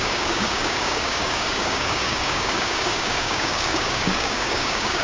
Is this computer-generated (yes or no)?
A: yes